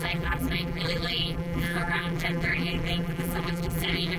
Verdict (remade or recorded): remade